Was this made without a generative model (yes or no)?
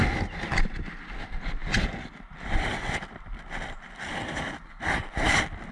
yes